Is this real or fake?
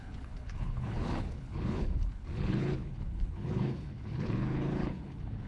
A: fake